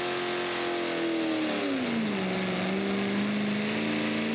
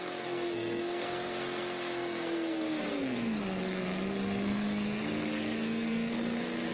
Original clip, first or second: first